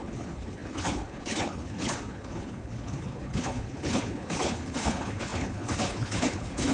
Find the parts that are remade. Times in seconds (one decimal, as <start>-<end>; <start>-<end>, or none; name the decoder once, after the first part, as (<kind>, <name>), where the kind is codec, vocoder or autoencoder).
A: 0.0-6.7 (codec, HILCodec)